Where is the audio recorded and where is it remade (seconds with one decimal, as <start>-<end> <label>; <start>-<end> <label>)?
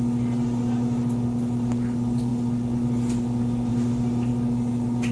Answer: 0.0-5.1 recorded